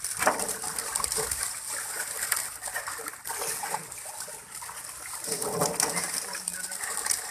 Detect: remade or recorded recorded